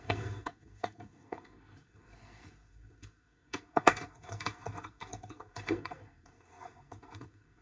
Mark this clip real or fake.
fake